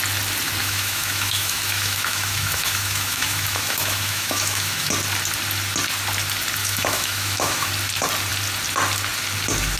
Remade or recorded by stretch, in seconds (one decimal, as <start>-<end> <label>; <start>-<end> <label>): 0.0-0.6 recorded; 0.6-4.9 remade; 4.9-6.6 recorded; 6.6-7.7 remade; 7.7-9.8 recorded